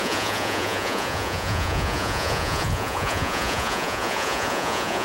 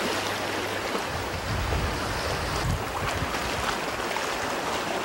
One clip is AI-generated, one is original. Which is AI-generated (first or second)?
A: first